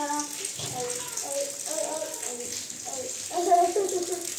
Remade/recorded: recorded